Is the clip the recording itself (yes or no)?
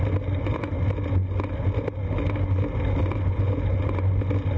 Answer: yes